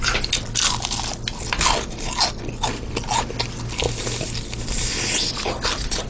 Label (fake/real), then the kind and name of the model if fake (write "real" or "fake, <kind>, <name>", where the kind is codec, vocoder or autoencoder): real